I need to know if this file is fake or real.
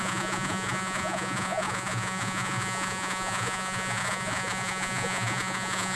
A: fake